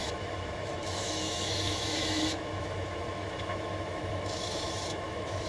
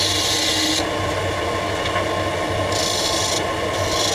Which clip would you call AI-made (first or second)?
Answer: first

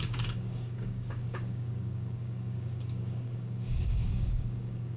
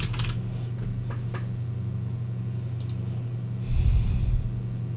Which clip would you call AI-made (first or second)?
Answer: first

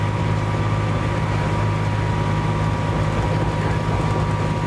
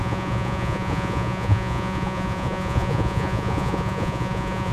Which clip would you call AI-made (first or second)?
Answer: second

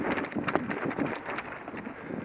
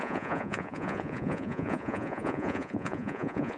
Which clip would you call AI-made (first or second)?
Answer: second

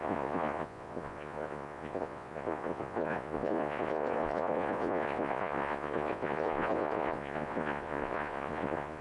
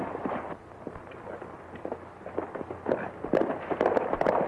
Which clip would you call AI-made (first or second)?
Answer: first